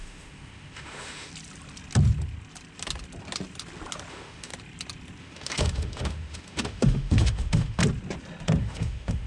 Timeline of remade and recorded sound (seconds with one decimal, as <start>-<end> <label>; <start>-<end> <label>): 0.0-1.3 remade; 1.3-4.1 recorded; 4.1-4.5 remade; 4.5-5.2 recorded; 5.2-7.8 remade; 7.8-8.6 recorded; 8.6-9.3 remade